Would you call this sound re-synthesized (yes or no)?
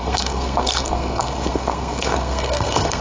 yes